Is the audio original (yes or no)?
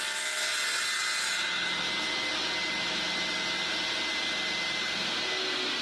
yes